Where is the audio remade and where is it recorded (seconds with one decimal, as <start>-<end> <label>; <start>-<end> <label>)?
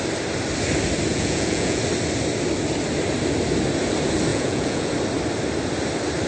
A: 0.0-1.1 recorded; 1.1-1.8 remade; 1.8-4.3 recorded; 4.3-4.9 remade; 4.9-6.3 recorded